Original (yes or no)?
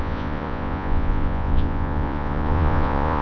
no